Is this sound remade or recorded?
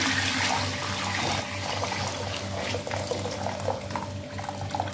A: recorded